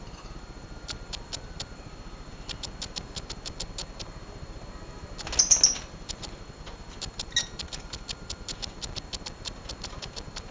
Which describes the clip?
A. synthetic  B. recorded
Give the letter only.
B